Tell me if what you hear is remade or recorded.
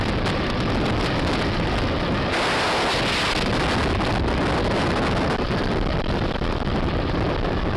recorded